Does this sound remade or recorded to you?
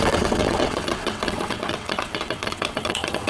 remade